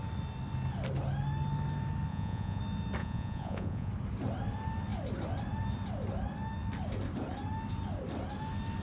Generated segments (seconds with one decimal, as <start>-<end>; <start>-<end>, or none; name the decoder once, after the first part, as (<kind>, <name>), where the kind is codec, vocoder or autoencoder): 2.1-2.6 (vocoder, Vocos); 3.0-3.9